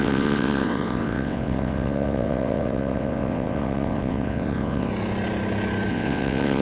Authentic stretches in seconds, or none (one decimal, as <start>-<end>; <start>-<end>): 4.9-5.9